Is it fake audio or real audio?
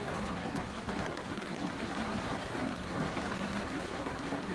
fake